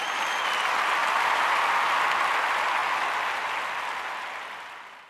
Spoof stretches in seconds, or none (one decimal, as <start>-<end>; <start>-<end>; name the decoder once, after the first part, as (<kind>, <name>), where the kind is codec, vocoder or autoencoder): 1.0-1.5 (vocoder, BigVGAN v2)

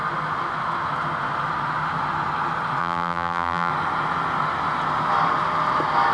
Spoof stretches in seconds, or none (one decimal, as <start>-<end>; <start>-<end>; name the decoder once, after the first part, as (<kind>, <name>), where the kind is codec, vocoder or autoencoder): 2.8-3.7 (vocoder, BigVGAN v2)

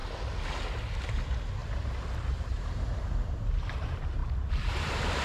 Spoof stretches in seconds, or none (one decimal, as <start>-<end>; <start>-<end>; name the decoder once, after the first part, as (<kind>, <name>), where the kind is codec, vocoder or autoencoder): 1.1-1.6 (vocoder, BigVGAN v2); 2.2-5.2

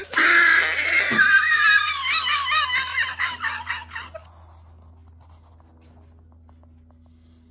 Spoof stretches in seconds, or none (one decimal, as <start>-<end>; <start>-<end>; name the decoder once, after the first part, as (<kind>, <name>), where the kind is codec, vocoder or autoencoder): 1.1-1.9 (vocoder, BigVGAN v2); 2.9-3.7

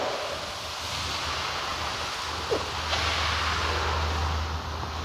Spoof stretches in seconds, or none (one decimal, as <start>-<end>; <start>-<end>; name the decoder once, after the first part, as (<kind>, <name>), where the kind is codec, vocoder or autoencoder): none